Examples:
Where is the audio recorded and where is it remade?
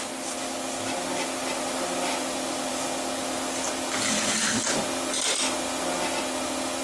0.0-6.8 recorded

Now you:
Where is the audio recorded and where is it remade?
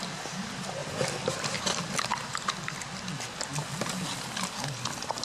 0.0-0.8 recorded; 0.8-1.8 remade; 1.8-3.5 recorded; 3.5-5.2 remade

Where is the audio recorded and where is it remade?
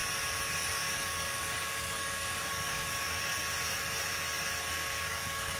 0.0-0.7 recorded; 0.7-3.4 remade; 3.4-4.7 recorded; 4.7-5.6 remade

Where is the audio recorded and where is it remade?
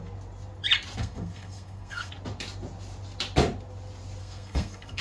0.0-1.0 recorded; 1.0-2.1 remade; 2.1-4.2 recorded; 4.2-5.0 remade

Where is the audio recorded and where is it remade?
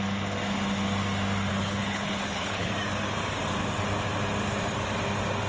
0.0-1.5 recorded; 1.5-2.7 remade; 2.7-5.5 recorded